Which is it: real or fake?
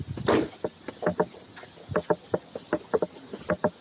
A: real